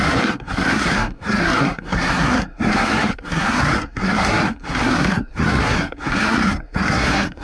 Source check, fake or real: fake